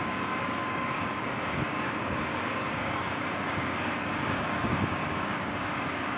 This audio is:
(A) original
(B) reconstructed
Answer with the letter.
B